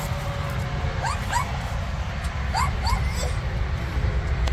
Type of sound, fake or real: real